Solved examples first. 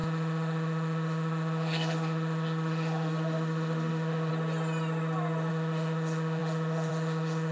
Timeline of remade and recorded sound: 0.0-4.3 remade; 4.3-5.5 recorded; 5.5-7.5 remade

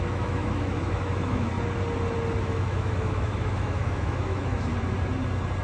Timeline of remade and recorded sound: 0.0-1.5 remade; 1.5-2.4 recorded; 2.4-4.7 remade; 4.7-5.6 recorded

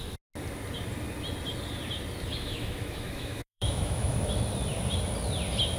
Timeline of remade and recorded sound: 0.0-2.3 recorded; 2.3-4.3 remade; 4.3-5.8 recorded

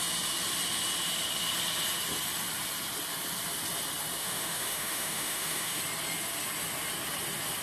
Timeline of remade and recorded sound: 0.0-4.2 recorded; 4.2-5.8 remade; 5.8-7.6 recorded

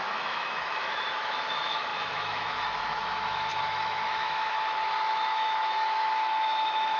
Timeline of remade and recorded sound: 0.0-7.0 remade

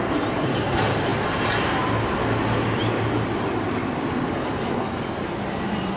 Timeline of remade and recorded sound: 0.0-6.0 recorded

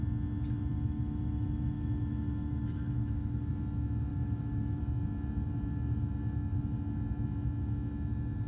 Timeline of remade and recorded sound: 0.0-0.7 recorded; 0.7-3.5 remade; 3.5-4.1 recorded; 4.1-4.8 remade; 4.8-8.5 recorded